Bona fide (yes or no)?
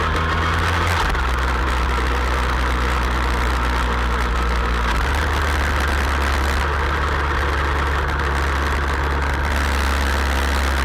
yes